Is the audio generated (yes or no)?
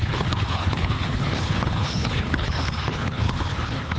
yes